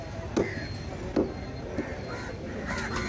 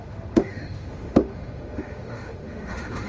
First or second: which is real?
first